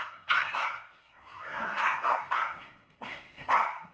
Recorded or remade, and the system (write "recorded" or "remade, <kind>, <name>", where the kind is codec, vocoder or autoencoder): remade, codec, SNAC